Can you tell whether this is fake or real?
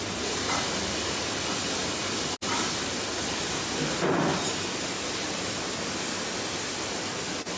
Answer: real